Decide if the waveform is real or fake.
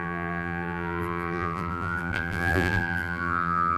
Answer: fake